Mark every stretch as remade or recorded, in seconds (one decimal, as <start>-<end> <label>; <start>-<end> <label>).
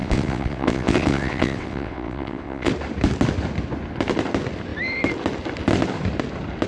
0.0-2.7 remade; 2.7-6.7 recorded